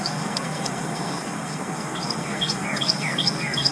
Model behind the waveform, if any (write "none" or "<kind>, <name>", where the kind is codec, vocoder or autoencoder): codec, SNAC